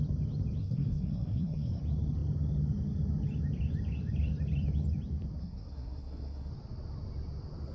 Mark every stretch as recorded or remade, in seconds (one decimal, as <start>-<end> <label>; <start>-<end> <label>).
0.0-0.6 recorded; 0.6-1.8 remade; 1.8-5.4 recorded; 5.4-6.5 remade; 6.5-7.7 recorded